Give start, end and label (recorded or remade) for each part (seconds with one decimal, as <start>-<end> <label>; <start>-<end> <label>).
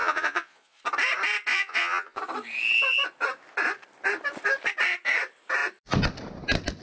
0.0-0.8 remade; 0.8-1.5 recorded; 1.5-2.2 remade; 2.2-6.8 recorded